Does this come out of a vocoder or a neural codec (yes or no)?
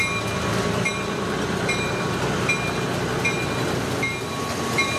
no